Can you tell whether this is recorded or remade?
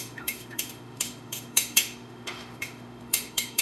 remade